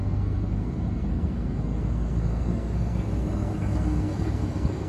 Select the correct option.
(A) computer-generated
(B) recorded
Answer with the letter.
A